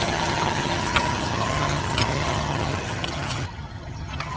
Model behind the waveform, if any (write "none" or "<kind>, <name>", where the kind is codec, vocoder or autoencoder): vocoder, HiFi-GAN